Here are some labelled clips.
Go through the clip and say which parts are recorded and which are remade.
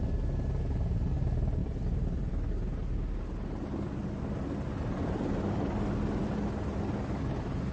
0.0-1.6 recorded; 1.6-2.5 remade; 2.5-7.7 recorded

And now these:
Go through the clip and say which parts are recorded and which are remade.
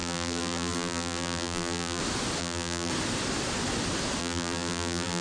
0.0-2.0 remade; 2.0-2.4 recorded; 2.4-2.9 remade; 2.9-4.2 recorded; 4.2-5.2 remade